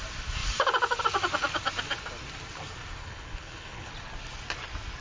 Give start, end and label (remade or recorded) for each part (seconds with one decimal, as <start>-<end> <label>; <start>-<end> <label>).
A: 0.0-3.0 recorded; 3.0-3.9 remade; 3.9-5.0 recorded